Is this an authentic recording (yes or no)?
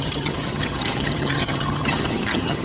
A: no